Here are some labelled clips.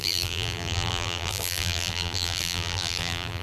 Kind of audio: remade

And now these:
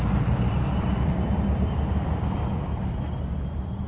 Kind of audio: remade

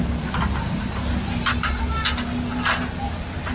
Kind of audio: recorded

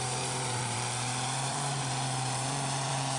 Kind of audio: remade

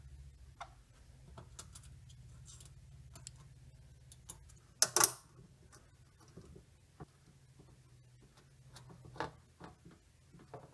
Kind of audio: recorded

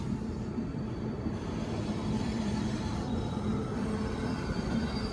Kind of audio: remade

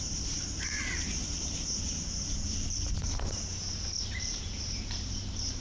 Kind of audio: remade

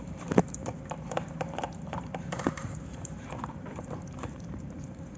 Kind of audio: remade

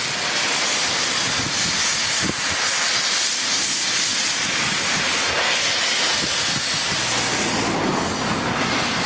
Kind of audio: recorded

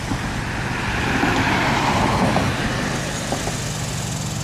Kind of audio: recorded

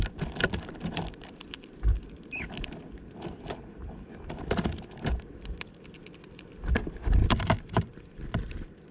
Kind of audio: remade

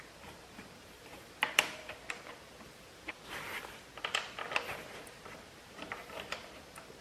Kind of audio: remade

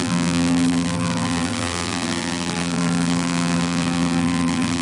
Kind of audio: remade